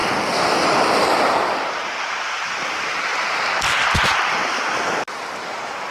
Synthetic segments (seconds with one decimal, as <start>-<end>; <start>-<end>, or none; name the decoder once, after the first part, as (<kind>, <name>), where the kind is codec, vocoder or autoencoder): 0.0-3.1 (vocoder, BigVGAN v2); 3.7-4.4; 5.4-5.9